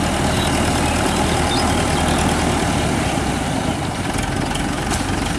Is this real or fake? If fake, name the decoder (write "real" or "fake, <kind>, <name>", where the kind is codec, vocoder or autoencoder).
real